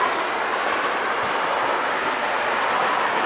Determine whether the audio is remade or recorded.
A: recorded